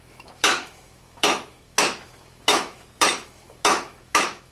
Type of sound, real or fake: fake